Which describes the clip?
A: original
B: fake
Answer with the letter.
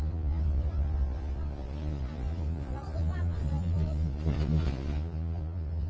B